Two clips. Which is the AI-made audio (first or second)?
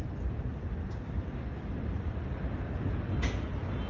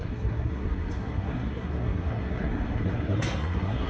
second